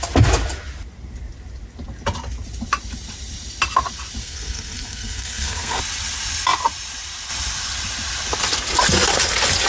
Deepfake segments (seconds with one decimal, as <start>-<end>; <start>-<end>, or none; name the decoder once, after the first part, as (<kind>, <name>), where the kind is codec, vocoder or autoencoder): 4.2-5.8 (codec, SNAC)